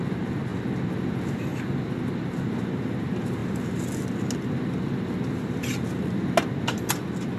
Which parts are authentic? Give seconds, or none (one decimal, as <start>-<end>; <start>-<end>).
0.0-7.4